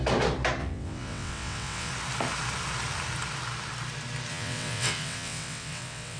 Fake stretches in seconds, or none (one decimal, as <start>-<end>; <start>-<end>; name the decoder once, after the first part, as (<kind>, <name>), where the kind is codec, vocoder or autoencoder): 0.6-1.9 (vocoder, WaveNeXt); 4.3-6.2